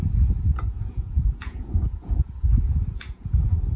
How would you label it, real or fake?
fake